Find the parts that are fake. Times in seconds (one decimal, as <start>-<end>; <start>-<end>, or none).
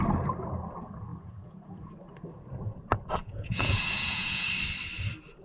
1.1-1.9; 3.2-4.5